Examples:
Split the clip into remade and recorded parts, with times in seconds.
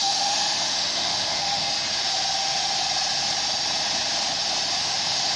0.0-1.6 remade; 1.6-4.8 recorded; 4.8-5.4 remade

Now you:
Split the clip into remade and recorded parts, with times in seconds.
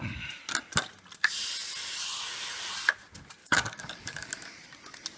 0.0-3.4 recorded; 3.4-4.3 remade; 4.3-5.2 recorded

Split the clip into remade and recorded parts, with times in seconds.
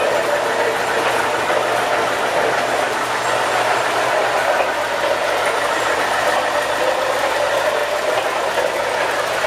0.0-7.8 recorded; 7.8-8.4 remade; 8.4-9.5 recorded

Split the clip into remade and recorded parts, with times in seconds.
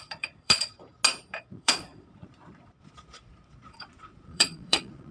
0.0-0.8 remade; 0.8-1.4 recorded; 1.4-5.1 remade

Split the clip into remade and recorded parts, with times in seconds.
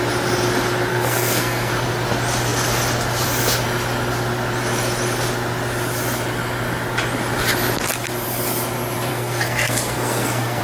0.0-0.9 recorded; 0.9-1.7 remade; 1.7-9.1 recorded; 9.1-10.6 remade